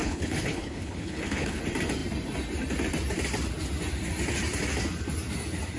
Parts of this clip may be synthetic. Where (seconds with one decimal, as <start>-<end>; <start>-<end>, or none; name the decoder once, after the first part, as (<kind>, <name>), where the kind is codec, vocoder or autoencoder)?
0.0-1.6 (codec, HILCodec)